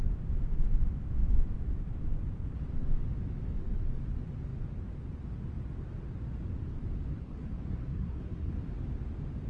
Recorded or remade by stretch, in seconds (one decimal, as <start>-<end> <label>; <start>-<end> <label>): 0.0-7.2 recorded; 7.2-8.5 remade; 8.5-9.5 recorded